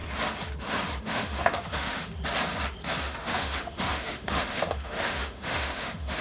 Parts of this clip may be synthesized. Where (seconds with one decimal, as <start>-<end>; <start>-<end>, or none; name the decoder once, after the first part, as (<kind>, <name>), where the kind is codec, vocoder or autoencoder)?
1.0-2.1 (autoencoder, DAC-VAE); 3.0-6.2